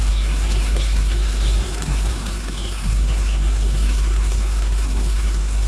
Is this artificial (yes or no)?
yes